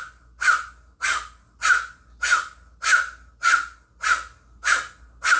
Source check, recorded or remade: recorded